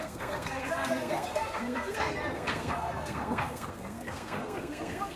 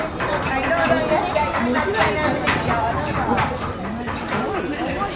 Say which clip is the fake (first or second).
first